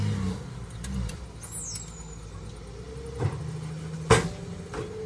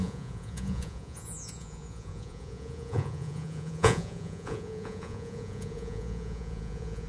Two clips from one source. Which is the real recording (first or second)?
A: first